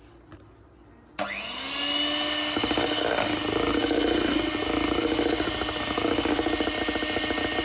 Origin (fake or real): real